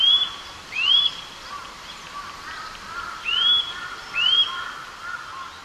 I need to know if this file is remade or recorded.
remade